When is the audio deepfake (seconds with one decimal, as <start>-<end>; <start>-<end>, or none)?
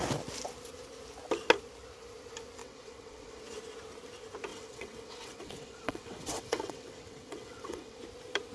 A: 2.6-3.4; 4.5-8.0